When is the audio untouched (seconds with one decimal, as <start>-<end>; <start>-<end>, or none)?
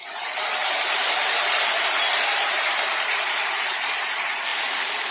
0.0-5.1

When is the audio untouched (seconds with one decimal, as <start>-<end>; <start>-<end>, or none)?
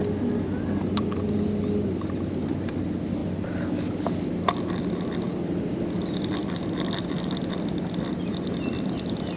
0.0-9.4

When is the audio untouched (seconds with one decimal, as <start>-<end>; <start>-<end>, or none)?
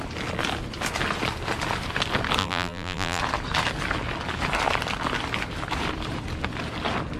0.0-2.4; 3.2-7.2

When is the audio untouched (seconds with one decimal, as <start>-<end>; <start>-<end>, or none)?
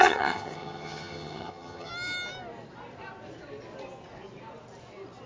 1.9-5.3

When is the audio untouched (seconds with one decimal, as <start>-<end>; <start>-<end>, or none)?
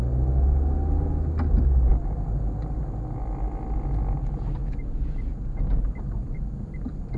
0.0-4.6; 5.8-7.2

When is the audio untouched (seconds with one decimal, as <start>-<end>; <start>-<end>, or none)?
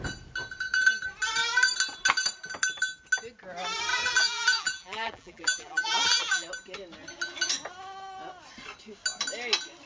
0.0-3.9; 6.5-9.9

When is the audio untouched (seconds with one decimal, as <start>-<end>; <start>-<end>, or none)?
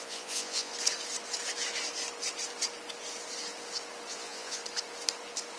0.7-4.1; 4.6-5.6